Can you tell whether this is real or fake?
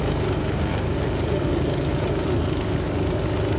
real